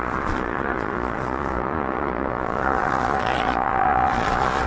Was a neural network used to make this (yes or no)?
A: yes